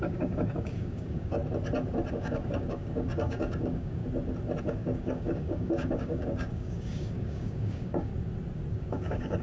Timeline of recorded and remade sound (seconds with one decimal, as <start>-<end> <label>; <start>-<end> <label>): 0.0-1.4 remade; 1.4-2.1 recorded; 2.1-4.0 remade; 4.0-4.6 recorded; 4.6-8.1 remade; 8.1-8.7 recorded; 8.7-9.4 remade